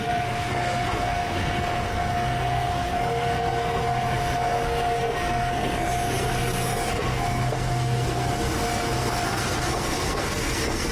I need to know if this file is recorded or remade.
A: remade